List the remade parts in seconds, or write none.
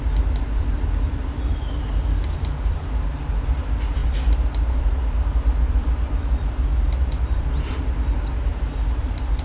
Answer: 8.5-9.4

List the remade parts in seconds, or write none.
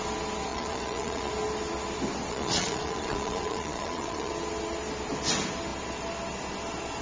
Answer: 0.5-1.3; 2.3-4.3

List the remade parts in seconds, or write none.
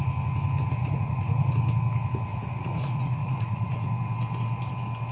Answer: 0.8-1.5; 2.3-3.9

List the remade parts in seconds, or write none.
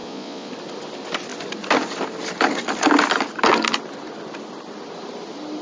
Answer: 0.0-0.5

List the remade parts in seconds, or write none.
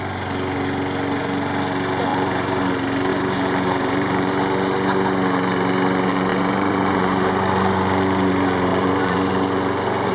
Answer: 2.1-2.6; 3.1-4.3; 6.3-7.3; 8.7-9.3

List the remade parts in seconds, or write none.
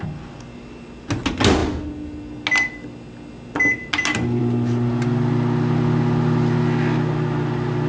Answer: none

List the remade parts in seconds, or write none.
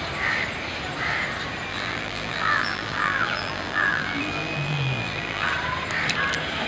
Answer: 1.7-5.5